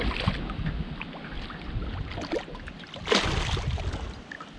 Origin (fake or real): real